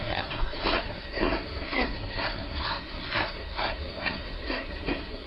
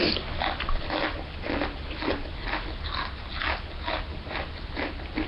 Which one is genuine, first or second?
second